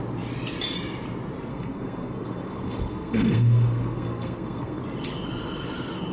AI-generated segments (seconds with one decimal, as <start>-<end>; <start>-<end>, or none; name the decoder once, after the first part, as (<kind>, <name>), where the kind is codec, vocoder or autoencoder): 1.5-4.8 (codec, SNAC)